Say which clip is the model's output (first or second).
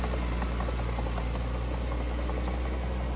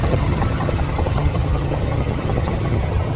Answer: second